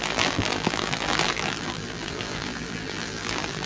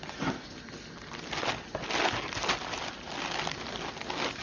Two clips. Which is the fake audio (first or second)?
first